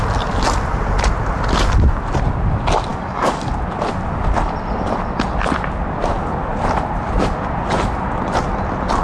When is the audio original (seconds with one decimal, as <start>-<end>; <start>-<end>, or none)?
0.0-2.9; 3.5-9.0

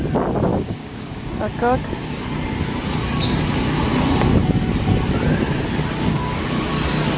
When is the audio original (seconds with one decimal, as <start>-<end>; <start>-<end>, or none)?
0.0-0.5; 1.2-6.1; 6.7-7.2

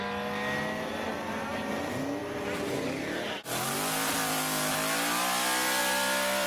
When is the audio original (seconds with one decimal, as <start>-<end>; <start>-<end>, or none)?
0.0-2.2; 4.7-5.8

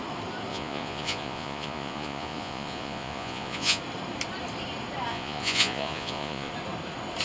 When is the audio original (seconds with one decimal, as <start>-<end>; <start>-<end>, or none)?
0.0-0.5; 3.8-5.1; 6.5-7.2